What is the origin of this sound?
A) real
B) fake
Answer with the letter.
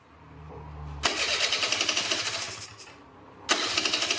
A